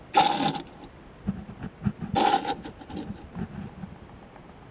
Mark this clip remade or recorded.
recorded